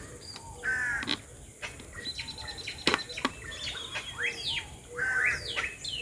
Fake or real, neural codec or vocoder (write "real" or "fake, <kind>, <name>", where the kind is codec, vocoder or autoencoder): real